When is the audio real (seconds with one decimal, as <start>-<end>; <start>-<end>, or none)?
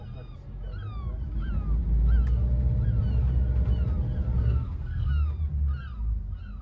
0.0-4.4; 5.1-6.6